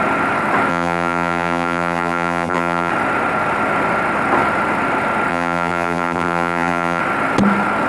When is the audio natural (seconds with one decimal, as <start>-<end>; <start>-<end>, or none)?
0.0-0.7; 2.9-5.3; 7.0-7.9